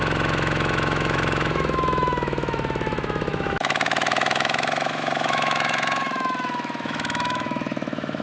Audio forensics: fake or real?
fake